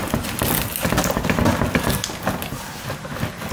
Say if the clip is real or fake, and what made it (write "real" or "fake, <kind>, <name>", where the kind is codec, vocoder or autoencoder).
real